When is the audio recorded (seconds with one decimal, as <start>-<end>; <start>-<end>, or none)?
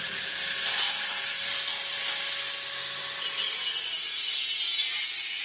0.0-1.3; 2.0-4.8